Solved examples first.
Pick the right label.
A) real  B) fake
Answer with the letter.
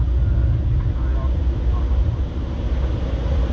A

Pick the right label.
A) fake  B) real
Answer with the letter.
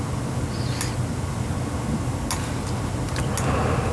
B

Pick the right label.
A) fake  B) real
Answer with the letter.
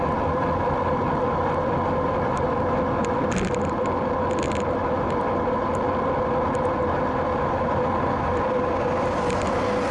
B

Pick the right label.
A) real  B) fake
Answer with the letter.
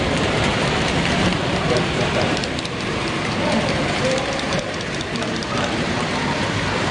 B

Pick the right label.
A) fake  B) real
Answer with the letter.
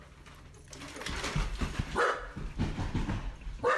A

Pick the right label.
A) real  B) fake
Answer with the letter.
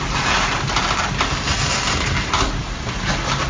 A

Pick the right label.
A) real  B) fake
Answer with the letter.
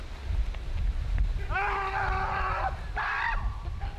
A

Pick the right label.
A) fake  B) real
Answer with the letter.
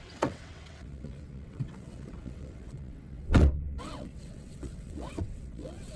A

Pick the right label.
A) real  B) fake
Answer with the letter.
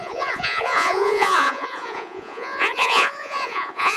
B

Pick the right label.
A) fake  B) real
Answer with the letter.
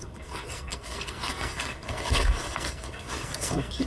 A